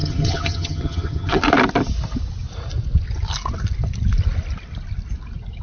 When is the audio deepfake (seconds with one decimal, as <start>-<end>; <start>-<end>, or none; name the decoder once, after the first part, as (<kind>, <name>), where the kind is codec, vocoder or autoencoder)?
0.0-1.4 (vocoder, HiFi-GAN)